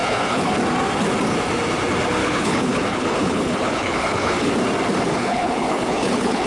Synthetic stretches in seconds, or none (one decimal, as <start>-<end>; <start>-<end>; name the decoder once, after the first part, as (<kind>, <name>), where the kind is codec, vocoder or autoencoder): 0.0-0.5 (codec, HILCodec); 2.2-4.5; 5.1-6.5